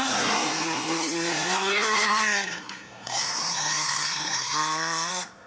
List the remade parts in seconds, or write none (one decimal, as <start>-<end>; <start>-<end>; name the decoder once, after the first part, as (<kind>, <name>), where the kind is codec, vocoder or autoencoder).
0.0-5.5 (codec, SNAC)